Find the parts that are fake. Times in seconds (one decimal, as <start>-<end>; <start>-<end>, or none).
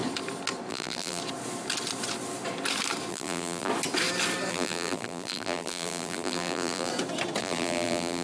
0.7-1.2; 3.1-3.7; 4.5-6.9; 7.4-8.2